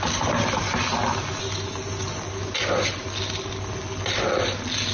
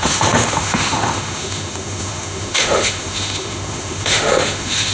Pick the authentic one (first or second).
first